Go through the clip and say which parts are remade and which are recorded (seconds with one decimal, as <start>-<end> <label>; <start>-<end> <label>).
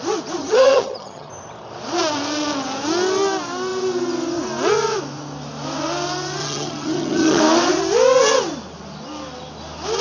0.0-0.4 recorded; 0.4-1.3 remade; 1.3-6.4 recorded; 6.4-7.4 remade; 7.4-10.0 recorded